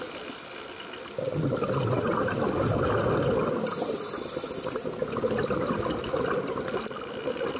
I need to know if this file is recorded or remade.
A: recorded